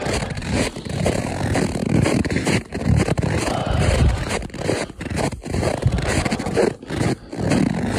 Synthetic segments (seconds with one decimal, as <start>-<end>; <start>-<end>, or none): 0.4-1.3; 1.8-4.5